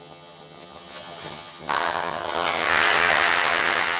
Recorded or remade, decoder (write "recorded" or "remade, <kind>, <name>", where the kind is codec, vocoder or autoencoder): remade, vocoder, HiFi-GAN